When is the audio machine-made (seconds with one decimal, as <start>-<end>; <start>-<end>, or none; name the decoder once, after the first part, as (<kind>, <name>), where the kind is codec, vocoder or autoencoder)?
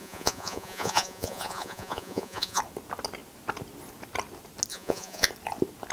0.0-2.6 (vocoder, Vocos); 4.7-5.3